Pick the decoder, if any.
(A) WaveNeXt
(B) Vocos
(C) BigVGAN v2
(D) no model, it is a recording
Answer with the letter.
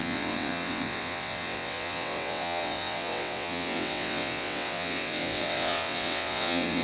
A